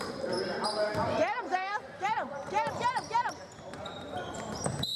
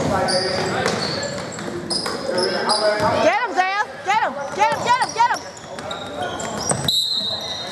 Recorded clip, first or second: second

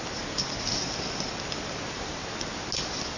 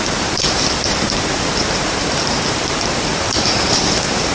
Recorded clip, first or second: first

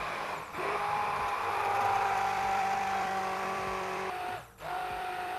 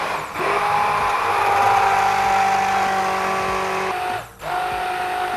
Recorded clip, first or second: second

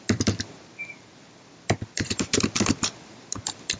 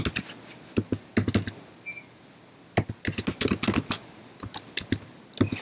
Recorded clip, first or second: second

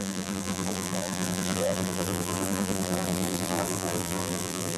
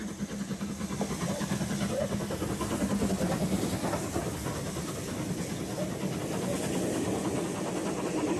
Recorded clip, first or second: second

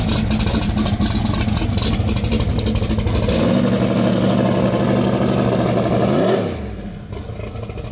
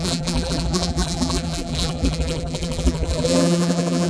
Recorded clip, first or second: first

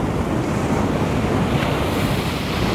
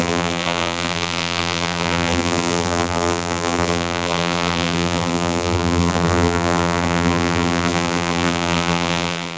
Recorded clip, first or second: first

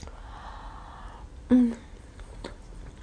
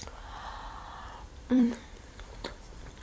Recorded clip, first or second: first